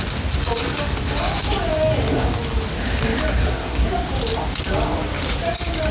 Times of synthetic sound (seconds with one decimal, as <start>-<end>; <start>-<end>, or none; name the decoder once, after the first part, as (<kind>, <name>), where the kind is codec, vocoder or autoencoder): 3.3-3.9 (codec, SNAC)